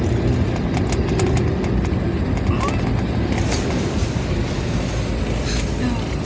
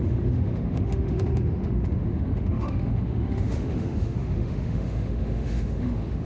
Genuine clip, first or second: first